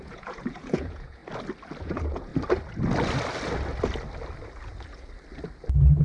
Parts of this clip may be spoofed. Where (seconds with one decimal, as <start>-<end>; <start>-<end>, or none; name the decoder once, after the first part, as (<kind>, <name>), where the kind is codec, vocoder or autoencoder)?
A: 0.0-1.2 (vocoder, Vocos); 1.8-2.3

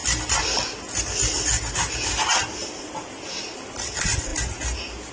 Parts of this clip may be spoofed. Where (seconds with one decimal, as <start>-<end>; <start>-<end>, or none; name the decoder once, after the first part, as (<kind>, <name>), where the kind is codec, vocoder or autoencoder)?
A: none

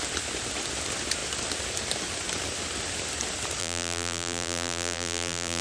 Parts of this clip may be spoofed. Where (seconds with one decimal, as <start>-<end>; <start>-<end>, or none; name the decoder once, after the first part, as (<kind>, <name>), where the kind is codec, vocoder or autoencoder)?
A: 3.6-5.6 (vocoder, BigVGAN v2)

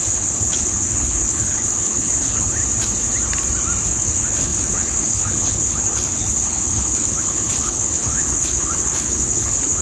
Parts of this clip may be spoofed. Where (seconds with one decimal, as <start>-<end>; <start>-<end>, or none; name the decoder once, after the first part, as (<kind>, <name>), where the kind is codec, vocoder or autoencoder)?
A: 0.0-2.6 (codec, HILCodec); 3.9-9.8

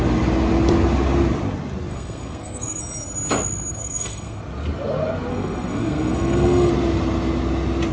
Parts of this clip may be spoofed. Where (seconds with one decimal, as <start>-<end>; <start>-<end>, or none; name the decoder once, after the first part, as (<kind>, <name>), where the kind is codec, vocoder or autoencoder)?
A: 1.9-2.8 (codec, SNAC); 3.8-4.4; 5.3-6.7

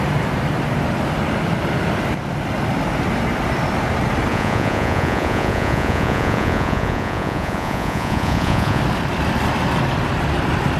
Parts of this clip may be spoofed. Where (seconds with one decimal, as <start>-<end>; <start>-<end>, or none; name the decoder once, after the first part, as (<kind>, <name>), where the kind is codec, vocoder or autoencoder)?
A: 4.3-8.8 (vocoder, Vocos)

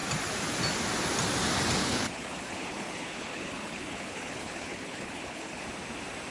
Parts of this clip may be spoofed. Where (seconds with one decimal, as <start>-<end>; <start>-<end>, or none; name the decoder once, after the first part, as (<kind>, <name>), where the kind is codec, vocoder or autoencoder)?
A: 1.8-5.6 (codec, HILCodec)